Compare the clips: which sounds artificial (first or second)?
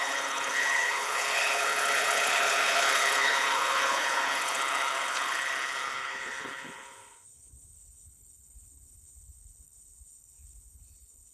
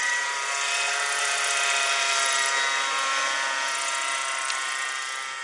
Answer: first